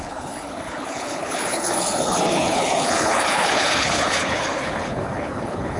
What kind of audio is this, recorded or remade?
remade